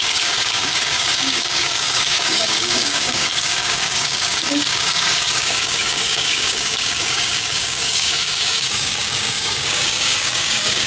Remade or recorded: remade